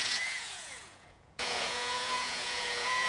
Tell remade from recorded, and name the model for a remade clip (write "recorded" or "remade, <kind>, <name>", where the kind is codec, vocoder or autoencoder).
remade, vocoder, Vocos